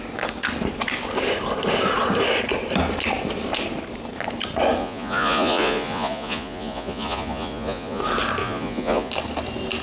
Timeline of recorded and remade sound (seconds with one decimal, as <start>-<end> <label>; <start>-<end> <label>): 0.0-4.8 recorded; 4.8-8.0 remade; 8.0-8.4 recorded; 8.4-9.1 remade; 9.1-9.8 recorded